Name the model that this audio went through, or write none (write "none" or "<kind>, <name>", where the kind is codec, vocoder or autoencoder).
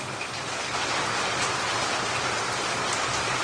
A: none